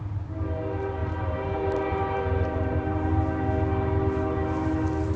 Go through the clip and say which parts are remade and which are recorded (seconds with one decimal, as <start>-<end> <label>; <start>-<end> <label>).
0.0-1.0 recorded; 1.0-3.1 remade; 3.1-5.2 recorded